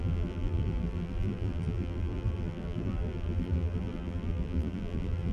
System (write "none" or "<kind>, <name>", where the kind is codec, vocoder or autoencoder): vocoder, BigVGAN v2